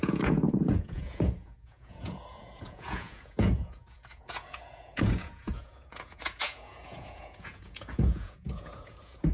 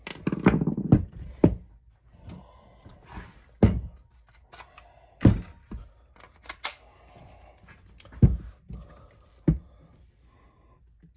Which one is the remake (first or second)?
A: first